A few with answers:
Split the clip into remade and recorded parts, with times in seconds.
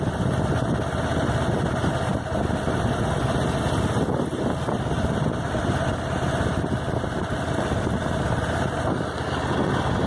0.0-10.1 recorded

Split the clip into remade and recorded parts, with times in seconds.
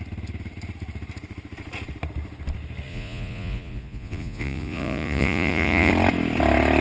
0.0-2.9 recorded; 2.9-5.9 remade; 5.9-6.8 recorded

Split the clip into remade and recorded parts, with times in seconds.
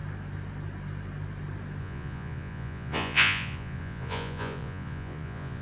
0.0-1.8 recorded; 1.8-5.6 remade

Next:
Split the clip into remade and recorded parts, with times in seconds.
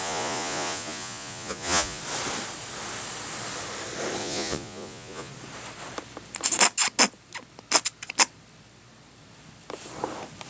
0.0-2.0 remade; 2.0-4.2 recorded; 4.2-5.3 remade; 5.3-10.5 recorded